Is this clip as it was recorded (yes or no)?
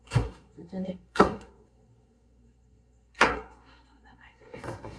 no